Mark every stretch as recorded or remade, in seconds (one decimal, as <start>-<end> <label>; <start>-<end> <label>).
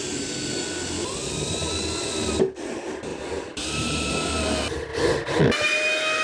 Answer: 0.0-3.1 recorded; 3.1-4.3 remade; 4.3-6.2 recorded